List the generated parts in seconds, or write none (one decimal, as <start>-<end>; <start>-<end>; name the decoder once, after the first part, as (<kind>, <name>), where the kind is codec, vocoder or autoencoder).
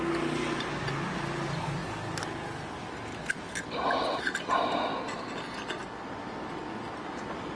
none